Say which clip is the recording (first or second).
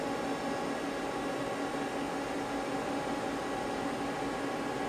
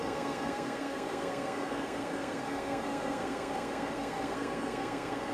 first